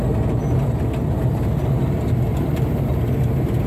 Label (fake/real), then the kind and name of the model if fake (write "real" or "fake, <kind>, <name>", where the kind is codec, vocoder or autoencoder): real